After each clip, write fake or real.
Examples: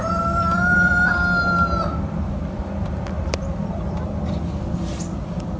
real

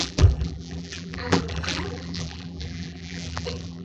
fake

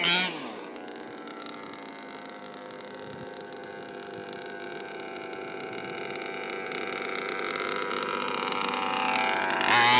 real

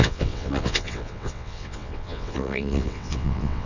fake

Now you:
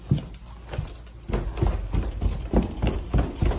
real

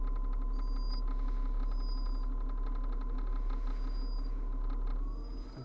real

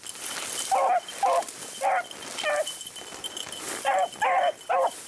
real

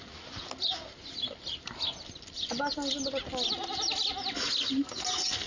real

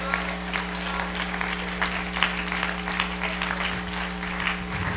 real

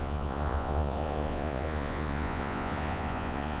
fake